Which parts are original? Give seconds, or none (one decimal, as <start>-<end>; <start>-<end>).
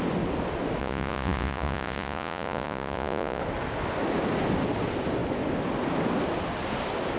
0.0-0.8; 3.4-7.2